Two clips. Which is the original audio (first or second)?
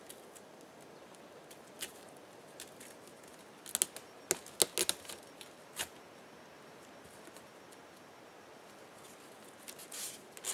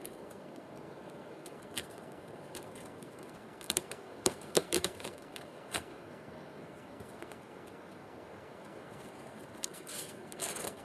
first